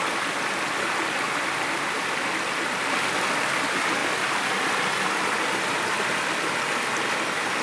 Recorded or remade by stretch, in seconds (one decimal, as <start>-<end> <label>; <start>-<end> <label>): 0.0-7.6 recorded

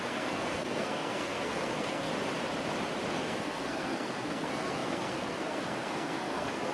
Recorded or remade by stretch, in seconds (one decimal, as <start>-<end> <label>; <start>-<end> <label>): 0.0-2.1 remade; 2.1-3.1 recorded; 3.1-6.7 remade

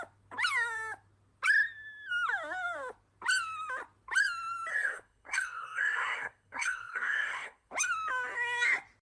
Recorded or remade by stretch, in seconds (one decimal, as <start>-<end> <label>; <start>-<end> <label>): 0.0-4.7 recorded; 4.7-7.7 remade; 7.7-9.0 recorded

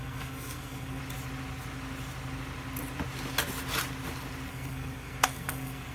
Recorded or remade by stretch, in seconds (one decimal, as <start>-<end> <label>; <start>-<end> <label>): 0.0-1.0 remade; 1.0-4.5 recorded; 4.5-5.9 remade

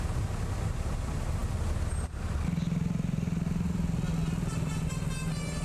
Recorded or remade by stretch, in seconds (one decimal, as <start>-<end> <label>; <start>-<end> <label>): 0.0-5.6 recorded

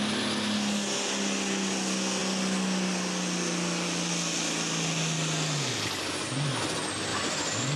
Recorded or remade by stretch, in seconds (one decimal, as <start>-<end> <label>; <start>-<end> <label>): 0.0-7.8 recorded

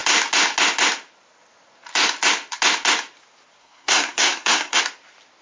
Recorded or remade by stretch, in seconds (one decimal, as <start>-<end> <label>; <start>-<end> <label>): 0.0-3.6 recorded; 3.6-4.8 remade; 4.8-5.4 recorded

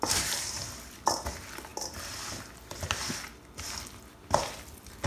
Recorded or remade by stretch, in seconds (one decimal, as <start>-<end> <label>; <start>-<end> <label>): 0.0-5.1 recorded